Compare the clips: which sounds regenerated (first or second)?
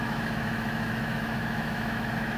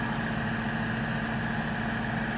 first